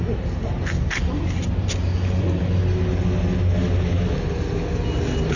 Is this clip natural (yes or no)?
yes